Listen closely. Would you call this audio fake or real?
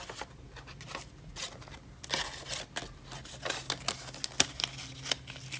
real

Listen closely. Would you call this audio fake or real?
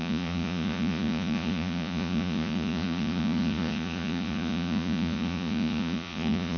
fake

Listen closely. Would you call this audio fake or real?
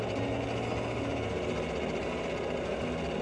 real